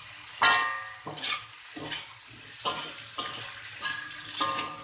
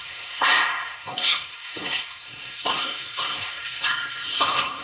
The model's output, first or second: second